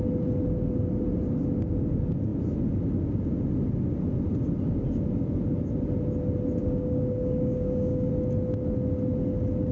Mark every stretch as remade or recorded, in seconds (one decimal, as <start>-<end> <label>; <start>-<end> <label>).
0.0-6.6 recorded; 6.6-8.1 remade; 8.1-9.7 recorded